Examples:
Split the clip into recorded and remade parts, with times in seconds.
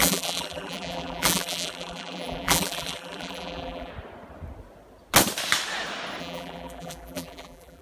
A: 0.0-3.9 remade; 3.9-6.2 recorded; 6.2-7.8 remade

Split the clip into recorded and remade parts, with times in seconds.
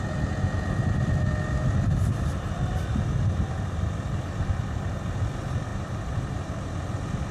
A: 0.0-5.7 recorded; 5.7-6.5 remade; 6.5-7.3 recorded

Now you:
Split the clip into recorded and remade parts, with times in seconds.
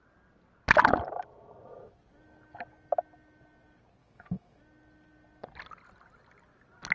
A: 0.0-4.0 recorded; 4.0-4.6 remade; 4.6-6.9 recorded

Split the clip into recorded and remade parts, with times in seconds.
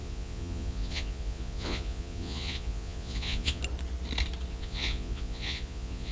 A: 0.0-3.6 remade; 3.6-4.5 recorded; 4.5-6.1 remade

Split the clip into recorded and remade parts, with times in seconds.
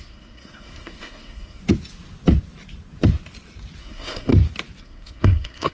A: 0.0-1.6 remade; 1.6-3.8 recorded; 3.8-4.3 remade; 4.3-4.8 recorded; 4.8-5.7 remade